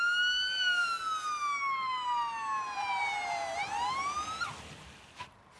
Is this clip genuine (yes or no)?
yes